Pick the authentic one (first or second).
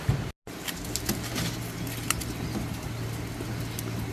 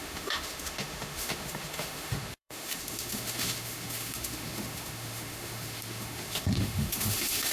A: first